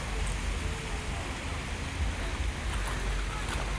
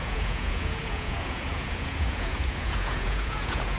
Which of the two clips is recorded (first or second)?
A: first